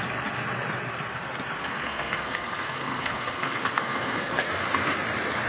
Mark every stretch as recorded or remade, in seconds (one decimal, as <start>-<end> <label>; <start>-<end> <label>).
0.0-1.6 recorded; 1.6-4.5 remade; 4.5-5.5 recorded